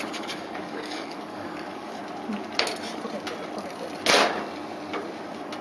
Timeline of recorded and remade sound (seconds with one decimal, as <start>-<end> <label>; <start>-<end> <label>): 0.0-2.0 remade; 2.0-5.6 recorded